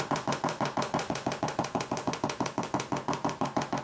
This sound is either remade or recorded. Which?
remade